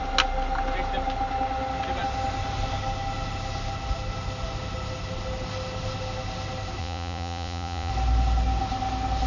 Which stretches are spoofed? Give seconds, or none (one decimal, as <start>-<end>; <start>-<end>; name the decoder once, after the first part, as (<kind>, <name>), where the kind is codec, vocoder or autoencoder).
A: 6.8-7.9 (vocoder, Vocos)